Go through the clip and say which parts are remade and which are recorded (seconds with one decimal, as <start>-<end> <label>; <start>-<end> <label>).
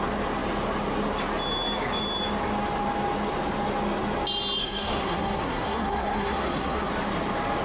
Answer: 0.0-4.6 recorded; 4.6-6.9 remade; 6.9-7.6 recorded